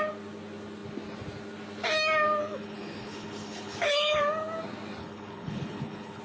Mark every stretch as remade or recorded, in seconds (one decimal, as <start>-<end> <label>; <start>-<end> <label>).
0.0-2.4 recorded; 2.4-4.2 remade; 4.2-5.0 recorded; 5.0-6.2 remade